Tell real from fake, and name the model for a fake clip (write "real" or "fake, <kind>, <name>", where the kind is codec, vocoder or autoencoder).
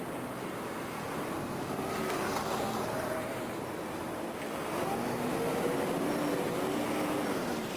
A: fake, vocoder, BigVGAN v2